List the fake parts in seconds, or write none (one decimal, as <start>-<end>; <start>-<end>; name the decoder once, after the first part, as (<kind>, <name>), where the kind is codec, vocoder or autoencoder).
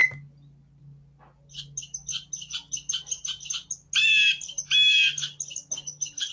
none